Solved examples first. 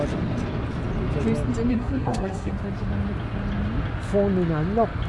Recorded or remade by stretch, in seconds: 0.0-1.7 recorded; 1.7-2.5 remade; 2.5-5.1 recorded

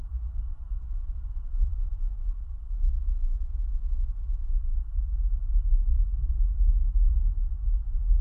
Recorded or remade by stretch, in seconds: 0.0-8.2 recorded

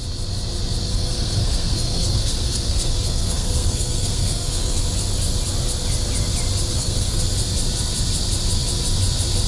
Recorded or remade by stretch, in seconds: 0.0-0.9 recorded; 0.9-4.8 remade; 4.8-6.7 recorded; 6.7-7.2 remade; 7.2-9.5 recorded